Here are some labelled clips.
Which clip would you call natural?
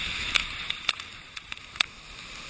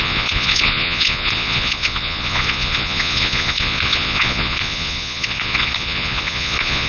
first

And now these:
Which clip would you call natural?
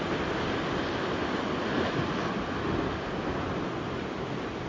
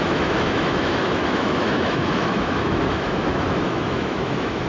first